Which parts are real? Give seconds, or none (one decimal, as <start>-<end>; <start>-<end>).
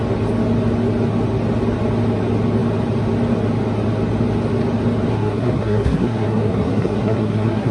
0.0-5.1